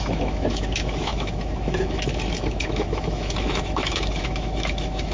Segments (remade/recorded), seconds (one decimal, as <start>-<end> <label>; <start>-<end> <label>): 0.0-5.1 remade